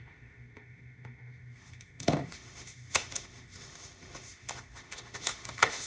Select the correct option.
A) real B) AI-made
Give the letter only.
B